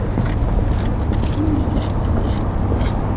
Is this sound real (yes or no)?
yes